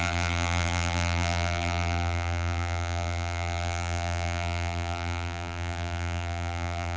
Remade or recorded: remade